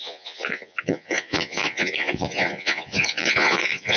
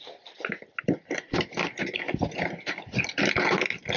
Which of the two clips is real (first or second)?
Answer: second